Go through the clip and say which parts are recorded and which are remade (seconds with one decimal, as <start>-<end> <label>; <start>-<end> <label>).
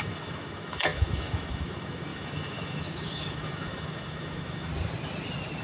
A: 0.0-4.7 remade; 4.7-5.6 recorded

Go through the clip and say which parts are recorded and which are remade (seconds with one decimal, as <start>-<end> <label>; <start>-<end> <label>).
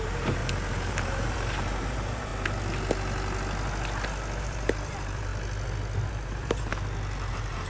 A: 0.0-0.4 remade; 0.4-0.9 recorded; 0.9-2.3 remade; 2.3-4.4 recorded; 4.4-5.3 remade; 5.3-6.1 recorded; 6.1-6.7 remade; 6.7-7.3 recorded; 7.3-7.7 remade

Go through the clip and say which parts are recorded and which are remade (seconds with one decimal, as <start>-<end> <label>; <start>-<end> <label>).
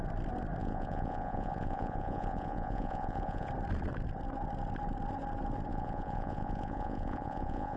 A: 0.0-0.6 recorded; 0.6-3.5 remade; 3.5-5.7 recorded; 5.7-7.8 remade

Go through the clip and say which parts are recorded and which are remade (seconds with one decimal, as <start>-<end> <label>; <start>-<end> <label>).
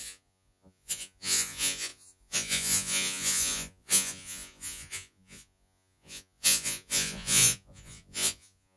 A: 0.0-8.8 remade